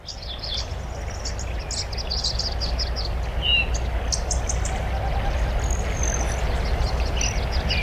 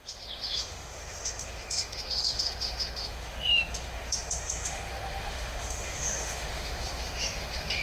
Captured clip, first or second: first